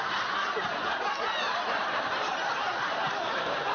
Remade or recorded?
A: recorded